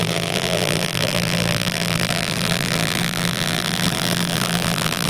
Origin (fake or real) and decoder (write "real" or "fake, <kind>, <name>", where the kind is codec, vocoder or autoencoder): fake, vocoder, BigVGAN v2